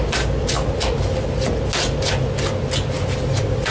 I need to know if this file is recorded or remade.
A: recorded